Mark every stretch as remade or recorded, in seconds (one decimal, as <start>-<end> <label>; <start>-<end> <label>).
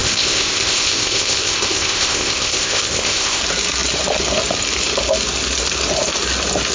0.0-3.4 remade; 3.4-6.7 recorded